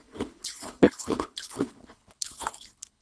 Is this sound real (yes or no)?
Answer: no